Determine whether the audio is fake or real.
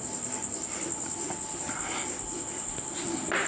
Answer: real